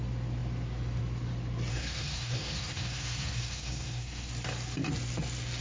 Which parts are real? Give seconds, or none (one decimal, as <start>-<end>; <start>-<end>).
0.0-1.7; 4.3-5.6